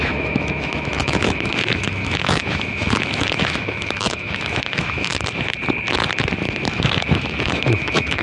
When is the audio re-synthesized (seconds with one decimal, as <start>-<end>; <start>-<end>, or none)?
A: 0.0-5.1; 6.7-8.2